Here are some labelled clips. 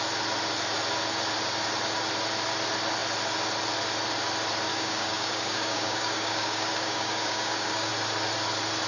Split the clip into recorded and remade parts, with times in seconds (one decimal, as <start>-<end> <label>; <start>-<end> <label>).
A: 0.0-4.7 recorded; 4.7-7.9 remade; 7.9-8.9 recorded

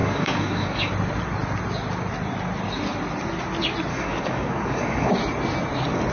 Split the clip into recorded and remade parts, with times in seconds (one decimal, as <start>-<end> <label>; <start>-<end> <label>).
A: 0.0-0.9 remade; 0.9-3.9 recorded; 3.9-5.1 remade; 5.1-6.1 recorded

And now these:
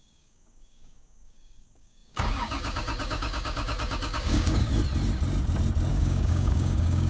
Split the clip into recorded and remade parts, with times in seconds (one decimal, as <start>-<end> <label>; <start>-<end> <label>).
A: 0.0-4.7 remade; 4.7-5.9 recorded; 5.9-7.1 remade